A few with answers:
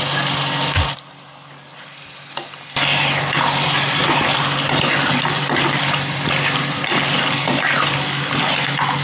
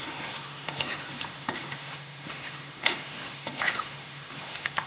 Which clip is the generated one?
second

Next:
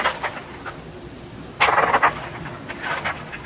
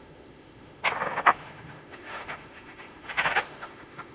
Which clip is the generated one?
second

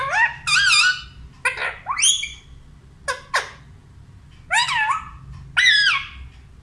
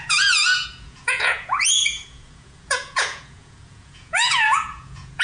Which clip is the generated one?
second